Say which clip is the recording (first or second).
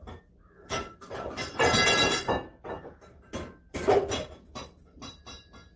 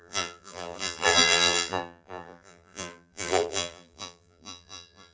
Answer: first